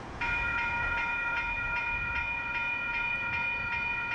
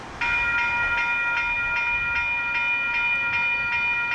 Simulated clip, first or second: first